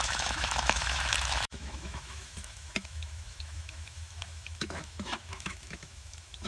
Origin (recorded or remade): remade